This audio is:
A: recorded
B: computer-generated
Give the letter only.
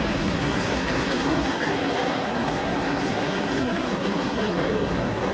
B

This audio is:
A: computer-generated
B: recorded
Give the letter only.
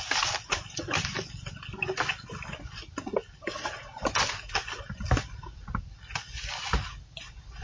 B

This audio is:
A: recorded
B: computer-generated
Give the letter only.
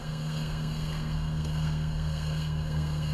B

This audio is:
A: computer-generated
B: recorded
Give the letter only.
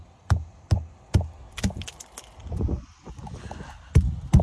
B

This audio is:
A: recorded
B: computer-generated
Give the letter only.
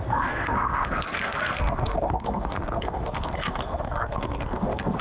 B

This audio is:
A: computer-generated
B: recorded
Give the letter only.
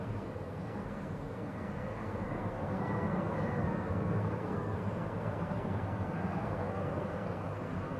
A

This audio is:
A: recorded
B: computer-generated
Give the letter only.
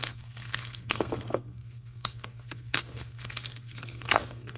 B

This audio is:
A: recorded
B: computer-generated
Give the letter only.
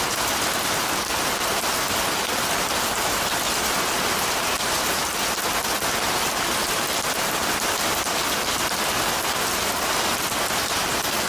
A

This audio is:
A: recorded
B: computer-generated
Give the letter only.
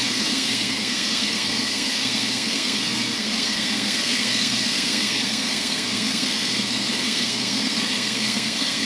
B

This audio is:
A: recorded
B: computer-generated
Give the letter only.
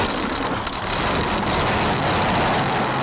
A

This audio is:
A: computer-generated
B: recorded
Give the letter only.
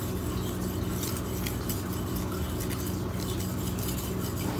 B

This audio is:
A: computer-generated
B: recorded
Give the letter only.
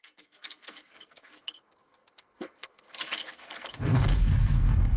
A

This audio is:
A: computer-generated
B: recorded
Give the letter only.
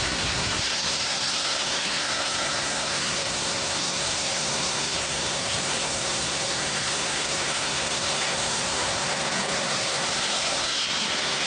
A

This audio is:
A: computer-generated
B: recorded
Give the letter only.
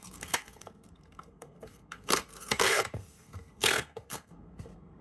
A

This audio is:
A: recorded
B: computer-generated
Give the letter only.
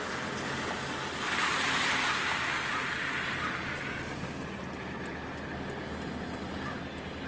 A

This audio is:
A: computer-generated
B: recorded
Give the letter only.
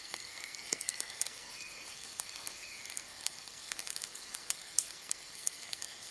A